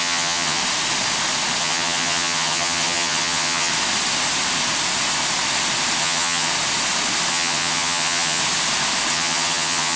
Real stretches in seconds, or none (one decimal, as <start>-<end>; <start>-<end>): 0.6-1.6; 3.7-6.0; 6.5-7.3; 8.4-9.1